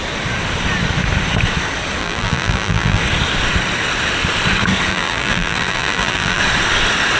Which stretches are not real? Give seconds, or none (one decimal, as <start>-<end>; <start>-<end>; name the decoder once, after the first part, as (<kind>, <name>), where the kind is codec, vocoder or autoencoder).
2.0-3.0 (vocoder, BigVGAN v2); 4.9-6.4